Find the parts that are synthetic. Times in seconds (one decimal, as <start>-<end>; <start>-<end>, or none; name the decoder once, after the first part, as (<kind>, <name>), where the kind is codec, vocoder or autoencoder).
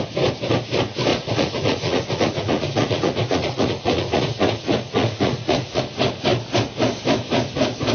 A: 1.1-5.8 (vocoder, Vocos)